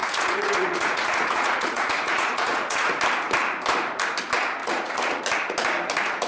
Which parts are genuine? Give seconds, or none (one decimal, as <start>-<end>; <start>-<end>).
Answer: 3.0-4.6; 5.2-6.3